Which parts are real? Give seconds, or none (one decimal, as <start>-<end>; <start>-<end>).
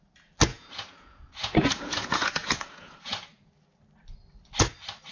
0.0-0.5; 3.5-5.1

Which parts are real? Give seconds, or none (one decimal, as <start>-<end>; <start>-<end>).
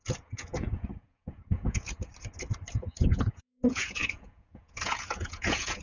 2.1-2.7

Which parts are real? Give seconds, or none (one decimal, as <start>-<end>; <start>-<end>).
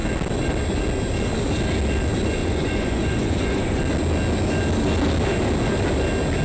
0.0-2.4; 3.8-6.4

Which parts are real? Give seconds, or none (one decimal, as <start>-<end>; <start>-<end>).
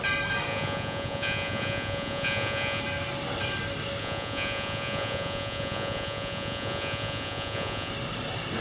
0.0-0.5; 2.8-4.0; 7.9-8.6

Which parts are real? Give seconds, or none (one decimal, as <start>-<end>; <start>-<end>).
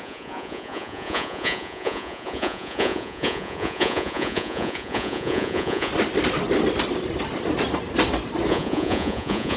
5.9-8.5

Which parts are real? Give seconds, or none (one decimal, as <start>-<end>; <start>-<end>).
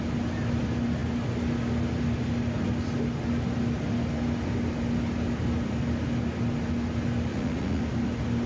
0.0-7.3; 7.8-8.5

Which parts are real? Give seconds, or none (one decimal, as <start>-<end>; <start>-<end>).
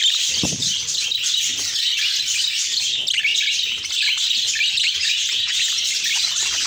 0.0-4.8; 5.8-6.7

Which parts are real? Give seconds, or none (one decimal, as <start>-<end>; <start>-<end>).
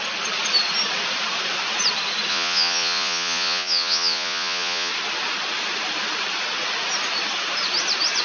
0.0-2.3; 4.9-8.2